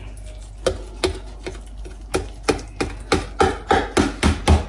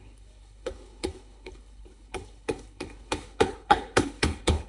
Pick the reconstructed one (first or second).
second